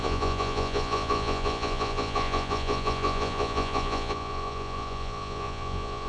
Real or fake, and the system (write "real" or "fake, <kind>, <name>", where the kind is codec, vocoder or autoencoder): fake, vocoder, Vocos